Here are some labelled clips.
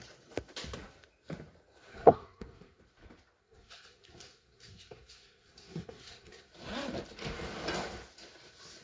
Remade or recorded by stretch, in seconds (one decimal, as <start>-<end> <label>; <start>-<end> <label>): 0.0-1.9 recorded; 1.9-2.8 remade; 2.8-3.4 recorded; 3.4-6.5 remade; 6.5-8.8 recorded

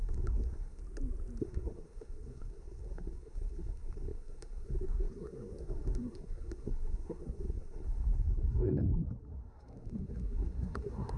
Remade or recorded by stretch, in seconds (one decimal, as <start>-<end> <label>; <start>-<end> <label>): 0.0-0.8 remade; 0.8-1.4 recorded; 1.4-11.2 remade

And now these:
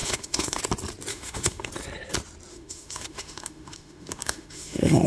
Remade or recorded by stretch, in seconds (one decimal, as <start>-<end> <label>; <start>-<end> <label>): 0.0-0.6 remade; 0.6-1.1 recorded; 1.1-1.7 remade; 1.7-2.5 recorded; 2.5-5.1 remade